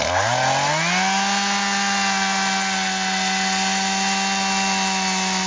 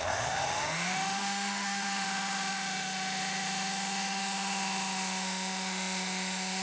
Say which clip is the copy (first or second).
second